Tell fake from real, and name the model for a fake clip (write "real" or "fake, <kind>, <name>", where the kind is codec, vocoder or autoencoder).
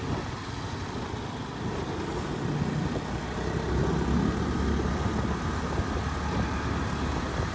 real